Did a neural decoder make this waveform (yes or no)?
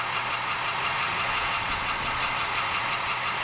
yes